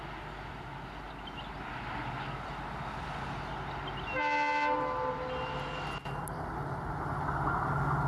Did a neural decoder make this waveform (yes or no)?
no